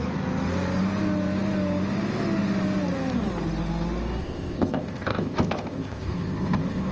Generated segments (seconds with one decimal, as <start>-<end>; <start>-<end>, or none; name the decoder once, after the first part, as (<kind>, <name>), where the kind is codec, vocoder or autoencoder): 4.2-6.9 (codec, ZipCodec)